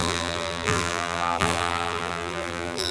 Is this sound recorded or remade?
remade